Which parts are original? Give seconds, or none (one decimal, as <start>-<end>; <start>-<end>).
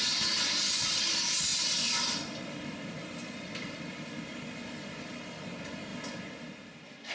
0.0-1.5; 5.4-7.1